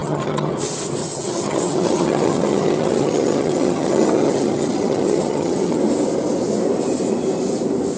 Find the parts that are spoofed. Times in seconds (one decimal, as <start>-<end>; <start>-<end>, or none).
0.0-0.5; 1.0-5.8